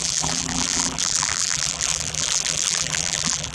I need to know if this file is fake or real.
fake